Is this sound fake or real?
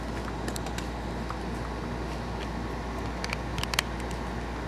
real